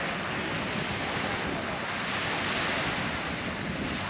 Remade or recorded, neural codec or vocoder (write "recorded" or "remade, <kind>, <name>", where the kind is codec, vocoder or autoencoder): recorded